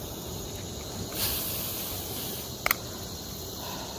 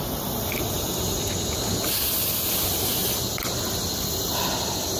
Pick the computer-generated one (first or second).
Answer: first